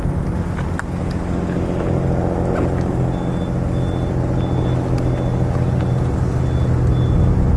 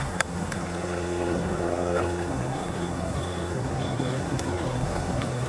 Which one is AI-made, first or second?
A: second